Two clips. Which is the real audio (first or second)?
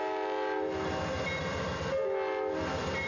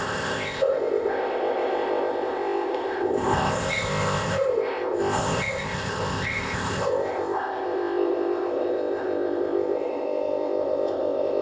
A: first